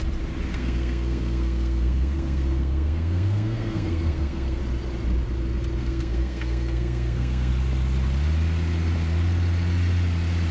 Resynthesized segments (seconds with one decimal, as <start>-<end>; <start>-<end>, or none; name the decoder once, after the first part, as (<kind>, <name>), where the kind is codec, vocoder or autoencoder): 0.5-4.6 (codec, SNAC); 5.8-7.5